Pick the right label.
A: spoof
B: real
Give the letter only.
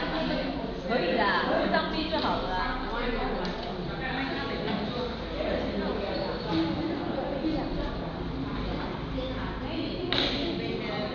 B